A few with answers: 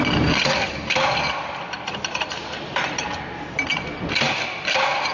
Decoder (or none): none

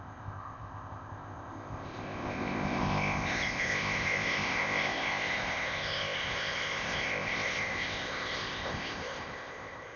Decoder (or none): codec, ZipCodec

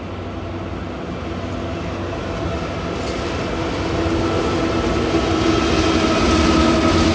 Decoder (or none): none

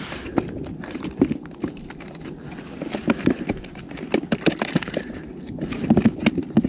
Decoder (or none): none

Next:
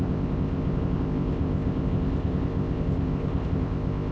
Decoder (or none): codec, ZipCodec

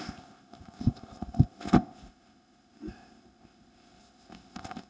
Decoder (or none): codec, ZipCodec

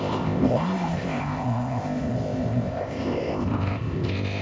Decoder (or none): codec, ZipCodec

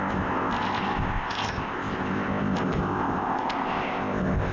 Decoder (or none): codec, ZipCodec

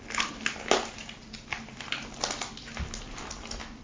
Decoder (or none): none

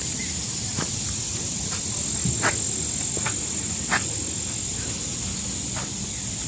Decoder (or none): none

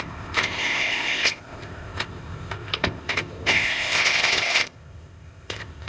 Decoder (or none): codec, ZipCodec